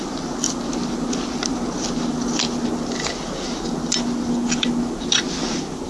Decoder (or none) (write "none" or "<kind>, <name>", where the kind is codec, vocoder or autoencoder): none